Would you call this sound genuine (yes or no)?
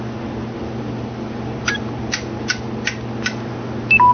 yes